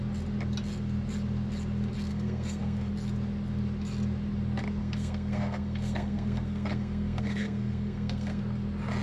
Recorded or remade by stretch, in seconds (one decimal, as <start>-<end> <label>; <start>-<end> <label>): 0.0-2.1 recorded; 2.1-2.9 remade; 2.9-4.8 recorded; 4.8-8.4 remade; 8.4-9.0 recorded